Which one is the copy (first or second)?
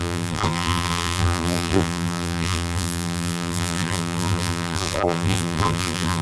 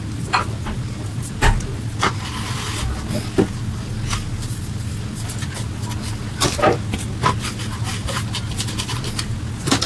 first